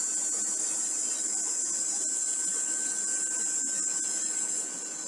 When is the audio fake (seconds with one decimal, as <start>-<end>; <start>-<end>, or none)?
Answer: none